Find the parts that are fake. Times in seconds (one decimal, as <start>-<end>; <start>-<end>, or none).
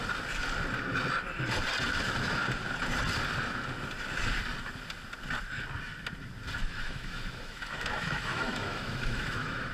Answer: 6.6-9.7